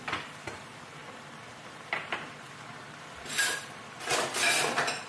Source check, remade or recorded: recorded